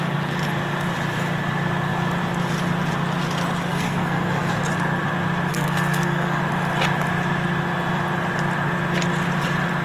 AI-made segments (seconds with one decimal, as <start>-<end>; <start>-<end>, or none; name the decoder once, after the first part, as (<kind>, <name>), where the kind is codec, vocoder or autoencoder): 3.7-4.5 (codec, SNAC); 5.5-6.4